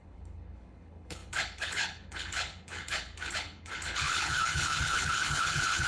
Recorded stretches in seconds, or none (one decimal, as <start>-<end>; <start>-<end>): none